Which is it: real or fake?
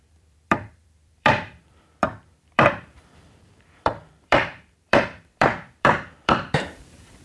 fake